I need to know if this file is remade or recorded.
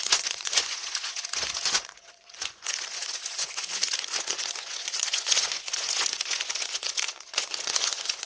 remade